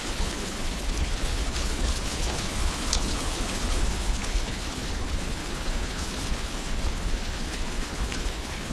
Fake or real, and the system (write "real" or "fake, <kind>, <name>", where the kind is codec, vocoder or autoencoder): fake, codec, HILCodec